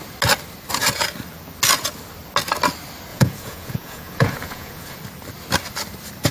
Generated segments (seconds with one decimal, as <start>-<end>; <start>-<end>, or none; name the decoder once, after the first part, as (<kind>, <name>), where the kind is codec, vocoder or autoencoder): 3.1-5.0 (vocoder, Vocos)